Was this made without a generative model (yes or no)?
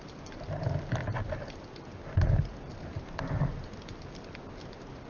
yes